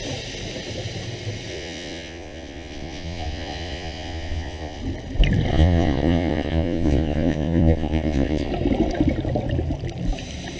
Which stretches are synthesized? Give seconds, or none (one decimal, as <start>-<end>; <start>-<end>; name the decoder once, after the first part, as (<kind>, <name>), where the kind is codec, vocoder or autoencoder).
1.5-4.8 (vocoder, Vocos); 5.5-8.5